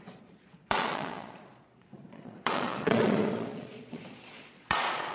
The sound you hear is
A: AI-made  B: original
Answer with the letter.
A